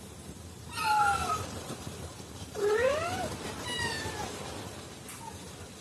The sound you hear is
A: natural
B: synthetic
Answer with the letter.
A